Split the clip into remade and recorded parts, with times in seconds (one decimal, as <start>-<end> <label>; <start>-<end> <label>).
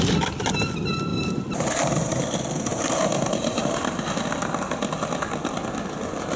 0.0-1.1 recorded; 1.1-2.2 remade; 2.2-2.7 recorded; 2.7-4.2 remade; 4.2-6.4 recorded